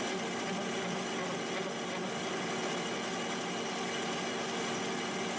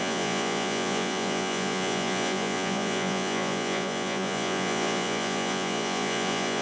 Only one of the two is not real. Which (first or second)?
second